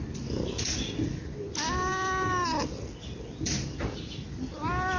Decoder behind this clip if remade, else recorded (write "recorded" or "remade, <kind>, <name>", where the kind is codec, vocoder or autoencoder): recorded